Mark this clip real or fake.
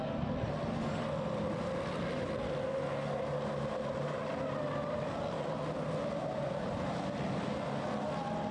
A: real